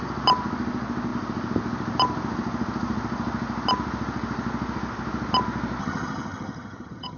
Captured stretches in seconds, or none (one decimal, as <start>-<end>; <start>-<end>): 0.0-5.8